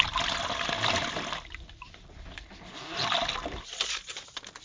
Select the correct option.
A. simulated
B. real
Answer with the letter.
B